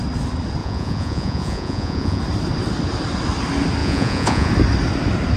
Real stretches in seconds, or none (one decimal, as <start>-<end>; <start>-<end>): 0.0-0.6; 2.2-3.8; 4.5-5.4